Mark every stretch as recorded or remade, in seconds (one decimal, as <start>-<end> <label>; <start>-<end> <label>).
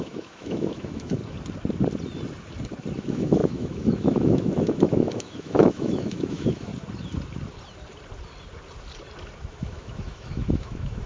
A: 0.0-1.2 remade; 1.2-3.0 recorded; 3.0-6.7 remade; 6.7-9.5 recorded; 9.5-11.1 remade